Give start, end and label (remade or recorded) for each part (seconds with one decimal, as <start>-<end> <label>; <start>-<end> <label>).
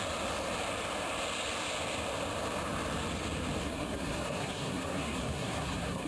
0.0-3.6 recorded; 3.6-6.1 remade